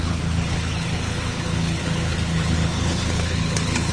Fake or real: fake